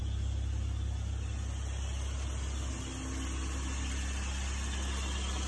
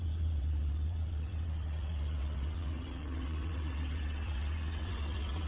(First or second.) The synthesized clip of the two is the second